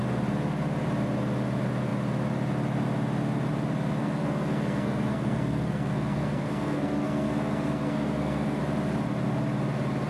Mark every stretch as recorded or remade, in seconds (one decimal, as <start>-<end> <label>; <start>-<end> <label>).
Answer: 0.0-4.0 recorded; 4.0-8.6 remade; 8.6-10.1 recorded